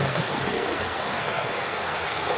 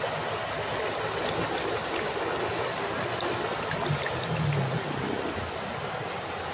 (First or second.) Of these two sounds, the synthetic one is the first